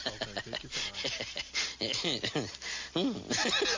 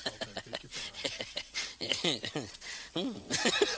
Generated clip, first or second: second